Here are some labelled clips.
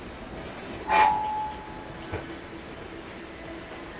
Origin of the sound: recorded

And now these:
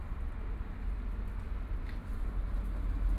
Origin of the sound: recorded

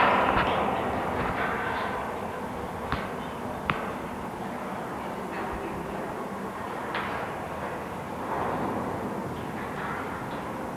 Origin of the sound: recorded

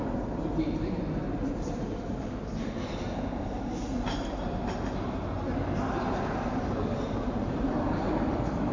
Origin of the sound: remade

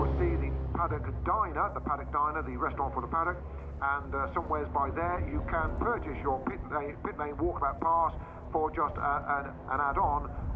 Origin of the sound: recorded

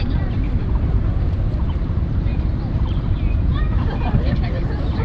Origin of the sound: remade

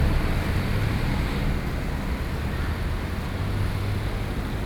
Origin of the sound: recorded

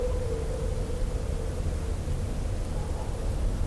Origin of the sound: recorded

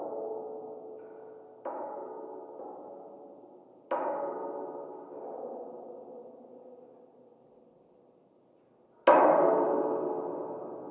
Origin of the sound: recorded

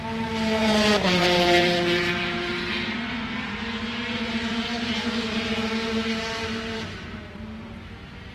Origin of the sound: remade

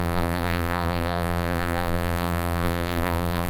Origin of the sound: remade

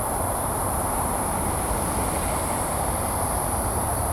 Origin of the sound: remade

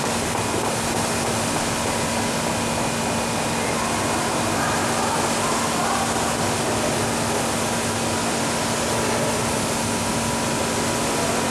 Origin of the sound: recorded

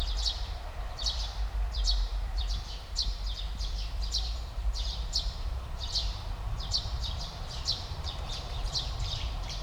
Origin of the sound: remade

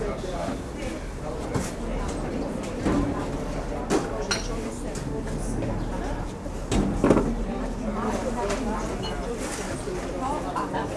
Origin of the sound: recorded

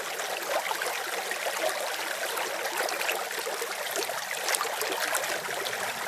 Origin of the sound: recorded